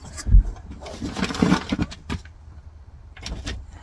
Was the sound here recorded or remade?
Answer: remade